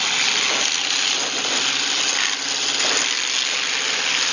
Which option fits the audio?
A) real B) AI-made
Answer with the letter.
A